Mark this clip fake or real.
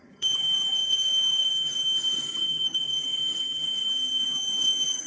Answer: fake